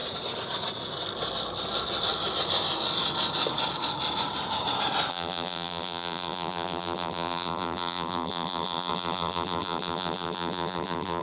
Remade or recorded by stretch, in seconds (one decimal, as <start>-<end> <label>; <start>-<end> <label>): 0.0-5.1 recorded; 5.1-11.2 remade